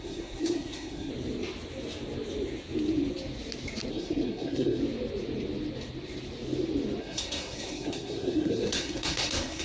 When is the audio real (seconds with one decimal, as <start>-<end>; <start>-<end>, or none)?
1.1-3.9; 4.8-7.0